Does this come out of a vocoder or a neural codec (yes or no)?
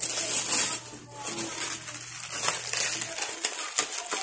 no